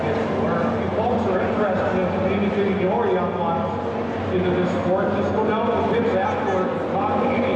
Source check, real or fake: real